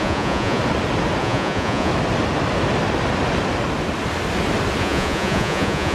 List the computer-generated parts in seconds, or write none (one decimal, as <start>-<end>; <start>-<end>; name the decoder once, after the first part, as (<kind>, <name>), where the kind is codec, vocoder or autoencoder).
0.0-0.6 (vocoder, Vocos); 1.2-1.9; 4.8-5.9